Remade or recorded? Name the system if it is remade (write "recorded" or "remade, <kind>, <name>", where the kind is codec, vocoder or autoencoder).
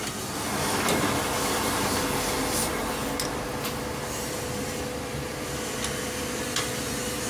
recorded